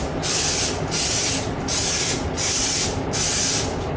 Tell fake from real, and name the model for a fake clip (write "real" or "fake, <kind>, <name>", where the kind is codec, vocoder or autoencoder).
real